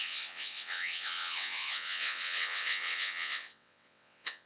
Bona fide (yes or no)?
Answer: no